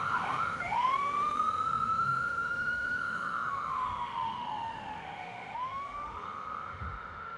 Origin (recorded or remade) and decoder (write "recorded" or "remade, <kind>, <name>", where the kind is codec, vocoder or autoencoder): remade, autoencoder, DAC-VAE